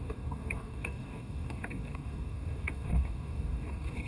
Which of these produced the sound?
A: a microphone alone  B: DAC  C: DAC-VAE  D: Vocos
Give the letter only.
B